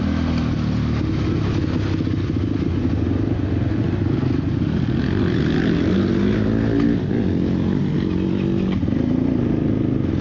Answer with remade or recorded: recorded